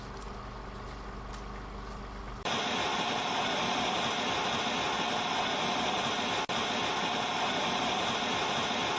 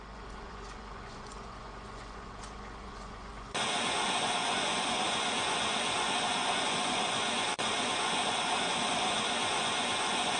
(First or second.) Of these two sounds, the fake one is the second